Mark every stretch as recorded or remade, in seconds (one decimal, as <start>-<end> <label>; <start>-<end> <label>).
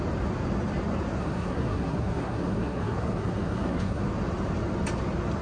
0.0-1.2 recorded; 1.2-4.0 remade; 4.0-5.4 recorded